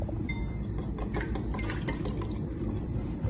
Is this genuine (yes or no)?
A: yes